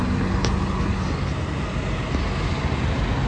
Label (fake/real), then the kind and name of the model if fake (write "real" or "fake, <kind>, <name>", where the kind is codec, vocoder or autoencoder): real